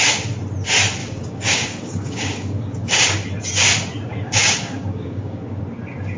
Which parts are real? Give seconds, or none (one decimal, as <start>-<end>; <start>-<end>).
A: 0.0-1.0; 3.0-4.1; 5.6-6.2